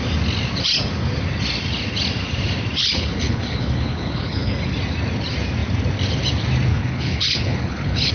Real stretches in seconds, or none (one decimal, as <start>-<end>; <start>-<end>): 0.0-2.8; 4.5-6.7